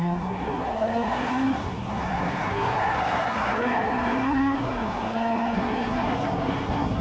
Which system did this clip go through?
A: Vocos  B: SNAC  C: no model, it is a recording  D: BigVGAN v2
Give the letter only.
B